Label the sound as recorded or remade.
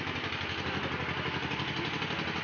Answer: recorded